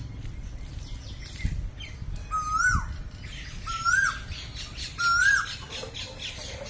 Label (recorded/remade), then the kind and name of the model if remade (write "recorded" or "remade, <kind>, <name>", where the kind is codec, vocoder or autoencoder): recorded